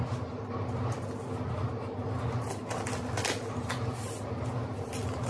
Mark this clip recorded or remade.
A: recorded